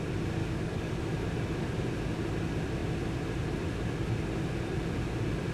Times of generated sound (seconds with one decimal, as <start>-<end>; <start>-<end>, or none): 0.4-1.0